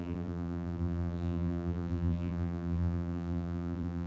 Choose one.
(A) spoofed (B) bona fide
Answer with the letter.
A